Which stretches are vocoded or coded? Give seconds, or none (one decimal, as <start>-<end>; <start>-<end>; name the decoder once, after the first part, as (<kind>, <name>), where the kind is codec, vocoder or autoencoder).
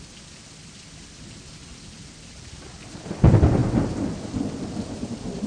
none